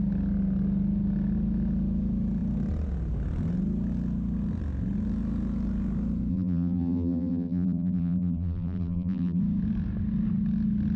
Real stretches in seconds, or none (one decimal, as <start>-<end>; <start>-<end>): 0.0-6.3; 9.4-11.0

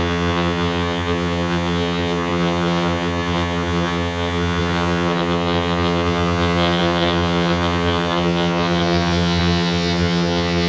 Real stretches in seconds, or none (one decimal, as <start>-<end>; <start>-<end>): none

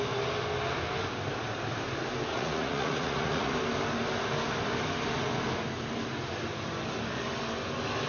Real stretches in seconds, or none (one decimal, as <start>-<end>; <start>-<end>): 0.0-2.3; 3.5-8.1